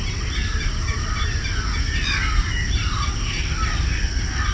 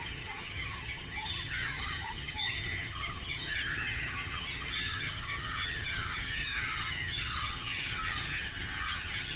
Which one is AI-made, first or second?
second